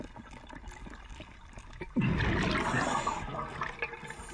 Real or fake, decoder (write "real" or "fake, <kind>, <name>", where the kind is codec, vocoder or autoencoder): real